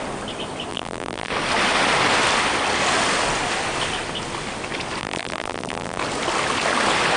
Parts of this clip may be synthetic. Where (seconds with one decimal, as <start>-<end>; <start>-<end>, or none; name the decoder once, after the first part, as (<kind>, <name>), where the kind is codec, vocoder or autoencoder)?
0.7-1.3 (vocoder, BigVGAN v2); 5.0-6.0